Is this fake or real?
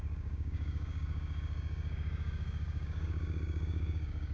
fake